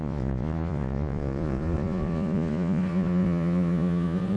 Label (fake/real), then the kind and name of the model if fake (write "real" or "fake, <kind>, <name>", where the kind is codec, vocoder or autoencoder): fake, vocoder, Vocos